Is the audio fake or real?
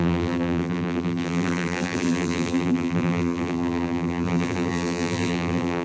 fake